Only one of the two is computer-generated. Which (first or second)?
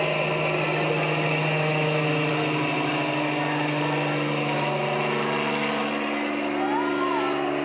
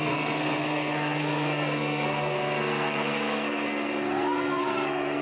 second